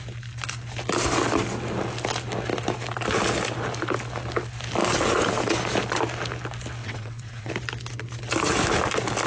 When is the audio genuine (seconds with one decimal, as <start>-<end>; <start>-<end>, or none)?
0.0-6.8; 7.5-9.3